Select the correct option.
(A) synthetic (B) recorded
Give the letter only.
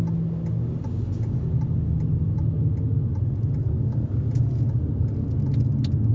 B